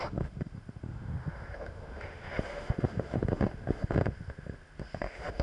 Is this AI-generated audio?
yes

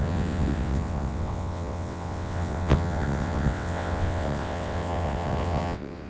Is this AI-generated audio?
yes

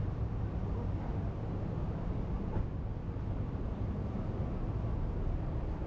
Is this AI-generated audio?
no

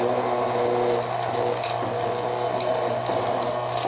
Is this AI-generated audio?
no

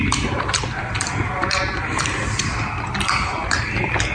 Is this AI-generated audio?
yes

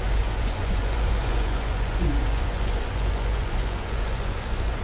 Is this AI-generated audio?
yes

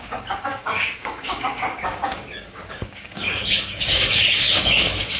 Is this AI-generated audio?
yes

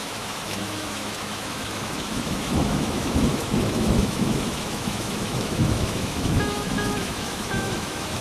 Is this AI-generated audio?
yes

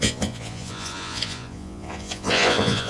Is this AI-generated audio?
yes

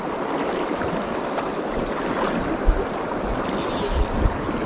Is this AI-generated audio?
no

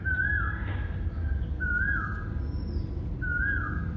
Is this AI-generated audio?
no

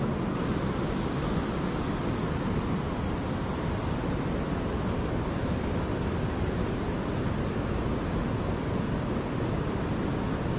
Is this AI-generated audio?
no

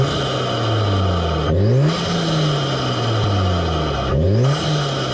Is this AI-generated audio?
no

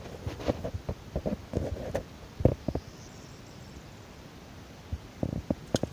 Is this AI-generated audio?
no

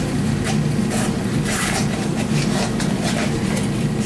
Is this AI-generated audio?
no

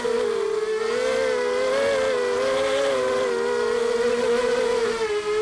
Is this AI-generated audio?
no